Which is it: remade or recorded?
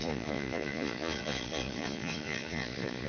remade